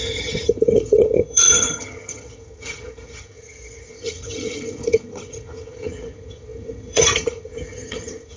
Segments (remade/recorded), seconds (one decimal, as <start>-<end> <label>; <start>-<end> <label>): 0.0-8.4 remade